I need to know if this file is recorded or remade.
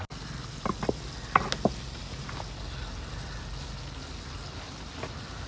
recorded